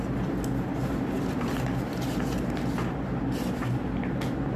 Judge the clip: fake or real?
real